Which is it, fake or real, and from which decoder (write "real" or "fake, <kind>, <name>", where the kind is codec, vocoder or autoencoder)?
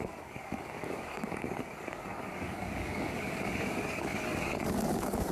fake, codec, DAC